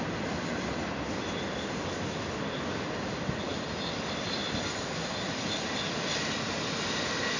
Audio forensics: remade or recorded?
recorded